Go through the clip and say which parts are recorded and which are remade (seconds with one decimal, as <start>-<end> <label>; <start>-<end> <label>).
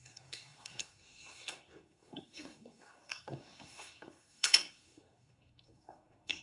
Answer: 0.0-6.4 remade